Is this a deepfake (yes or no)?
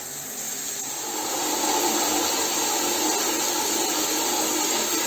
no